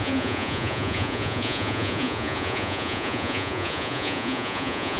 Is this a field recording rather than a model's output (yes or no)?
no